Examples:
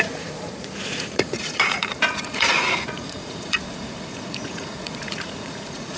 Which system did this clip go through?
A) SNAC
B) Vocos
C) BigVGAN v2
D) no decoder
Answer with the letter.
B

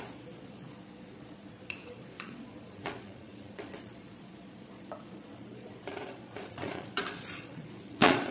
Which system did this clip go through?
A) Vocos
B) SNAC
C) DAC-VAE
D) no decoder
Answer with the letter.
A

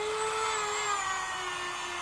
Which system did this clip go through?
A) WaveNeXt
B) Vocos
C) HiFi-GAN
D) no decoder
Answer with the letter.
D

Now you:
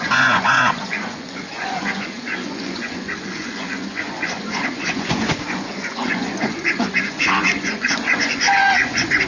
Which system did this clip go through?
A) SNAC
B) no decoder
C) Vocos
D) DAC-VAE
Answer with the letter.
C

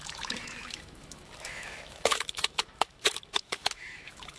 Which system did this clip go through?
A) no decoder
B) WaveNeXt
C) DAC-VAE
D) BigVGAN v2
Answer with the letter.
C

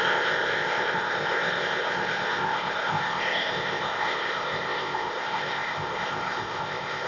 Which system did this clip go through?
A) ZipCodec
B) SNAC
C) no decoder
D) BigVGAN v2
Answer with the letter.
A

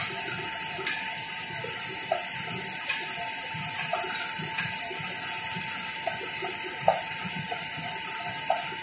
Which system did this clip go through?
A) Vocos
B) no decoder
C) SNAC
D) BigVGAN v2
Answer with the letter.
B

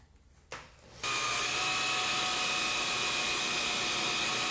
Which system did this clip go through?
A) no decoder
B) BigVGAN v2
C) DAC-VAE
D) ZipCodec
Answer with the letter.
A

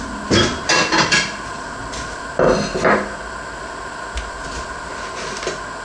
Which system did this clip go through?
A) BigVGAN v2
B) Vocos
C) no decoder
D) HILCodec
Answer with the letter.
C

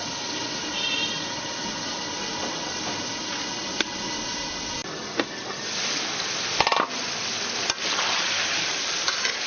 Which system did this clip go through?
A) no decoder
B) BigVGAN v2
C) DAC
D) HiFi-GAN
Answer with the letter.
A